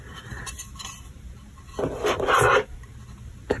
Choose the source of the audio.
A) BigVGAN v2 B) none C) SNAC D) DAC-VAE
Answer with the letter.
B